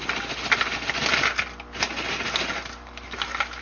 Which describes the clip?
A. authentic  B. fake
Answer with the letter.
A